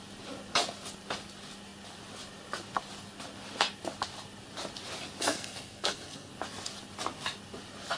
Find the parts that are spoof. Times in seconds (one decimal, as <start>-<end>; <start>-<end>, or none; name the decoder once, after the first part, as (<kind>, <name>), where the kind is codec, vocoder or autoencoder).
5.2-6.3 (codec, SNAC)

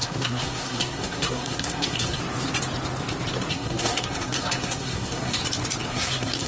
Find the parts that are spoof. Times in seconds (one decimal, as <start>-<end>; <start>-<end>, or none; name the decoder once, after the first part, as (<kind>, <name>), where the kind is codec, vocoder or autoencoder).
0.0-2.2 (codec, SNAC); 3.5-5.4; 5.9-6.5

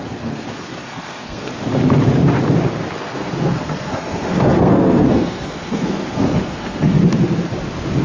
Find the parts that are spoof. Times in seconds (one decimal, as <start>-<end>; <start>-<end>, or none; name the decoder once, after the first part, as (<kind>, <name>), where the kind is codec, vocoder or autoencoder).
0.0-1.5 (codec, SNAC); 3.0-7.0

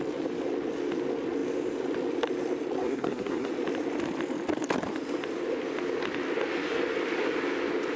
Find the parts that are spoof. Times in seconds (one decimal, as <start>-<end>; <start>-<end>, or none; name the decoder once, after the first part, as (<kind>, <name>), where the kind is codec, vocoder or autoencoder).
2.8-3.5 (codec, SNAC)